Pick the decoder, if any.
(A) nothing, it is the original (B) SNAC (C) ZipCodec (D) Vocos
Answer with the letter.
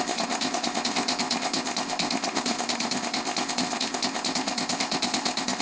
C